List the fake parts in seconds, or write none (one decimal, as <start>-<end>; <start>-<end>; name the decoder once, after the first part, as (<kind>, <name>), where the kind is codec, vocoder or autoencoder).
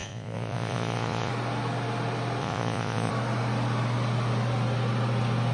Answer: 0.0-1.3 (vocoder, Vocos); 2.4-3.1